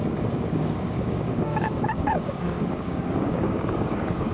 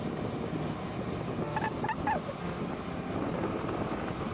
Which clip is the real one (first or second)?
second